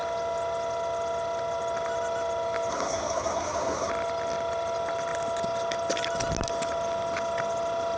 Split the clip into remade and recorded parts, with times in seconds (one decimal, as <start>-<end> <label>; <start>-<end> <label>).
0.0-2.7 recorded; 2.7-3.9 remade; 3.9-8.0 recorded